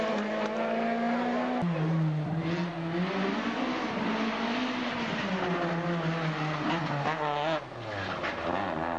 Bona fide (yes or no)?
yes